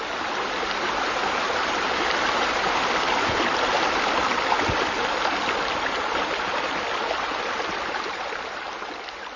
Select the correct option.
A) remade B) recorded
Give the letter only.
B